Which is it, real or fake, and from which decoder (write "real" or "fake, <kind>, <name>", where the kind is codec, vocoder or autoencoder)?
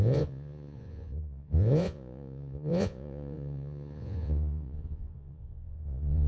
fake, vocoder, Vocos